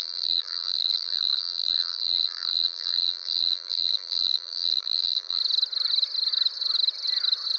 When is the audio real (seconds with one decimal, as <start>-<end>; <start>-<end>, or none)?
5.4-7.6